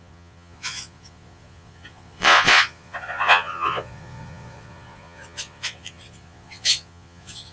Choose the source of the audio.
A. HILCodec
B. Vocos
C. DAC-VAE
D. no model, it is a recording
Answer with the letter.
B